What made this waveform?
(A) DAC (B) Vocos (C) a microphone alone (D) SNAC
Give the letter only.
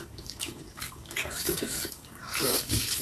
A